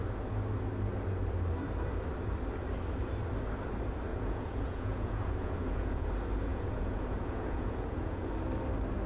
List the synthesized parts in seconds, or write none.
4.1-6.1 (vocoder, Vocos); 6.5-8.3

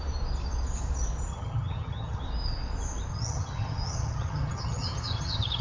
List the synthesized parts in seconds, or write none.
1.3-2.2 (vocoder, HiFi-GAN); 3.1-5.6